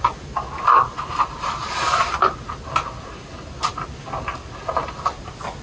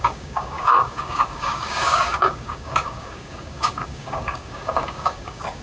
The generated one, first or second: second